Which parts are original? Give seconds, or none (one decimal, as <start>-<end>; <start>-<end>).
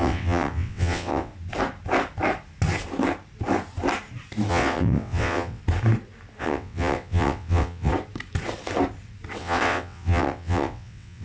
1.3-4.5; 5.6-6.4; 7.9-9.4